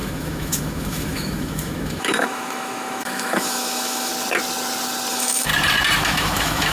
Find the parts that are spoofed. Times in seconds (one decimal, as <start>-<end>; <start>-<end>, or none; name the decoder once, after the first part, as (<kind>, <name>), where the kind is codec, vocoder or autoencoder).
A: 0.0-4.1 (autoencoder, DAC-VAE); 5.1-5.5; 6.0-6.7